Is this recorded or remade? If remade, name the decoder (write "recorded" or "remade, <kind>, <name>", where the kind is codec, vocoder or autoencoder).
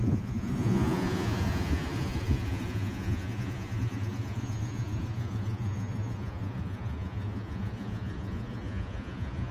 remade, vocoder, Vocos